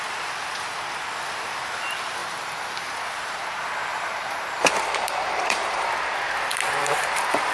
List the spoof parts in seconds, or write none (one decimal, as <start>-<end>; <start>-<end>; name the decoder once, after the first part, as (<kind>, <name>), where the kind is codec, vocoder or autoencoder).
2.2-2.9 (vocoder, BigVGAN v2); 3.9-5.9; 6.8-7.5

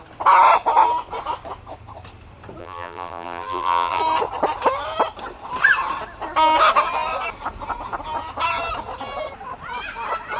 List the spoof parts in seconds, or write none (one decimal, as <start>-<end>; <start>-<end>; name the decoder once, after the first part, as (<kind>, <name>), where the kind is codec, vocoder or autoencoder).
2.6-4.0 (vocoder, BigVGAN v2)

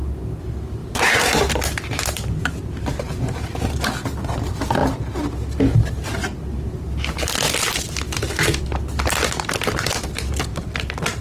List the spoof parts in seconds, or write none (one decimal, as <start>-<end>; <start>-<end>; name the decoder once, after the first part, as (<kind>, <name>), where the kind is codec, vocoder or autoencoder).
0.8-3.8 (vocoder, BigVGAN v2); 10.5-11.2

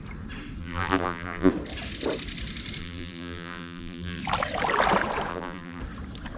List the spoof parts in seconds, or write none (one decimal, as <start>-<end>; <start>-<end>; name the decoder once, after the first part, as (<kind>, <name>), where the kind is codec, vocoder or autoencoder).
0.6-1.5 (vocoder, BigVGAN v2); 2.8-4.2; 5.3-5.8

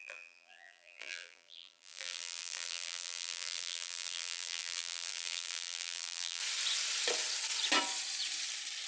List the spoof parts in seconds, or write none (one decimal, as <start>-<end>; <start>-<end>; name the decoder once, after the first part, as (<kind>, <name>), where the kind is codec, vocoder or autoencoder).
0.0-6.4 (vocoder, BigVGAN v2)

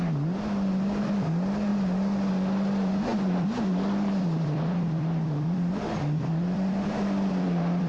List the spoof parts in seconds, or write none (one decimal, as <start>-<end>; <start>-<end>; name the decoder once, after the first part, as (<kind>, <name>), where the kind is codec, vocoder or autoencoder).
3.1-7.9 (vocoder, BigVGAN v2)

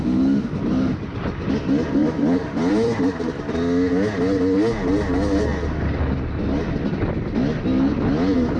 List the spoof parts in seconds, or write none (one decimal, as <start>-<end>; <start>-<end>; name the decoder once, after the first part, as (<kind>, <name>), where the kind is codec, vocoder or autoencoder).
2.0-3.0 (vocoder, BigVGAN v2)